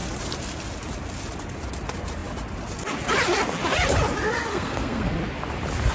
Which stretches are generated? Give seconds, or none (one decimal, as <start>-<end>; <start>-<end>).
4.5-5.1